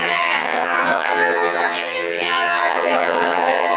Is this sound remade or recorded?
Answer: remade